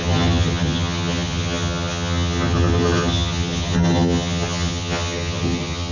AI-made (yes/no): yes